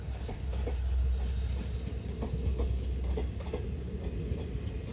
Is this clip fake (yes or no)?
no